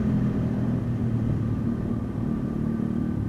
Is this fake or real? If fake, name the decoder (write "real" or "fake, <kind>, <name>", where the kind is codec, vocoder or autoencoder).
real